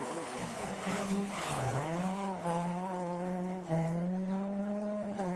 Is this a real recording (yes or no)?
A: no